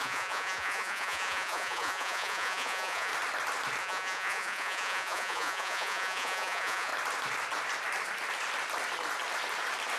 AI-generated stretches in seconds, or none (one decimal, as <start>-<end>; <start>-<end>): 0.0-3.1; 3.8-6.9